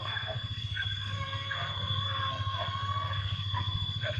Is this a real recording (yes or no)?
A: no